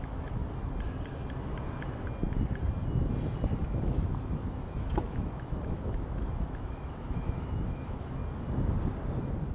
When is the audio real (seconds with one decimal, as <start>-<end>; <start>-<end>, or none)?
0.4-3.6; 8.2-9.5